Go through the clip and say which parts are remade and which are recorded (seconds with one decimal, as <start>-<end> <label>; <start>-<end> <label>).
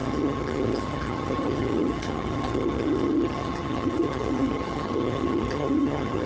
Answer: 0.0-6.3 remade